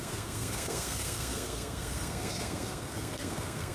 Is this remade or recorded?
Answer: remade